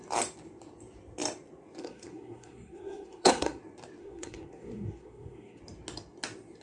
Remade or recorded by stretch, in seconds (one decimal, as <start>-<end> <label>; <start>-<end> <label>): 0.0-1.8 recorded; 1.8-3.6 remade; 3.6-4.0 recorded; 4.0-5.6 remade; 5.6-6.6 recorded